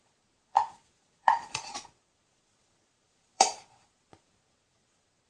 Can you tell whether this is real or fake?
fake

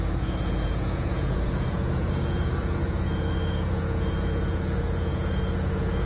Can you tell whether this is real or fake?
fake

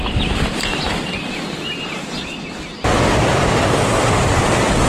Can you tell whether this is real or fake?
real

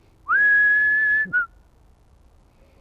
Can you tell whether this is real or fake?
real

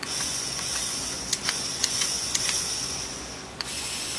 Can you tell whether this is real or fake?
fake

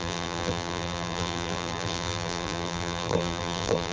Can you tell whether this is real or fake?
fake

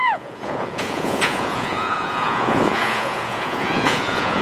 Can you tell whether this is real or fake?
fake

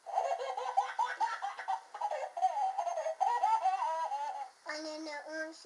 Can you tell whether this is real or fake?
real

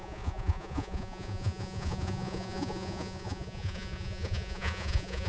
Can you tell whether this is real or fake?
fake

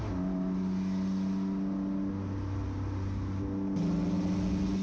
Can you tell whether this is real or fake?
real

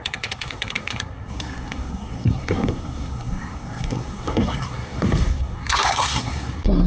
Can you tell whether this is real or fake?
fake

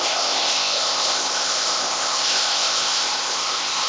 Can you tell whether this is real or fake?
fake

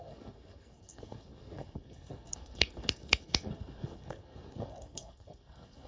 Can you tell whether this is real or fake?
fake